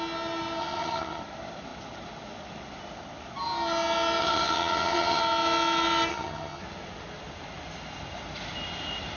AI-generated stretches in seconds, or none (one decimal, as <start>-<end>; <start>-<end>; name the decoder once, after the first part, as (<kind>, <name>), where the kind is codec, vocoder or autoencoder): 0.6-1.2 (vocoder, HiFi-GAN); 4.2-5.2; 6.1-6.6